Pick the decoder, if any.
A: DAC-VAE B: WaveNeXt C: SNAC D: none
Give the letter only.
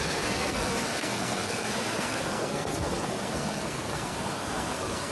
C